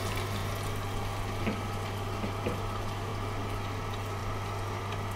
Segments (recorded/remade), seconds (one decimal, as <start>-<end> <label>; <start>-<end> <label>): 0.0-5.2 recorded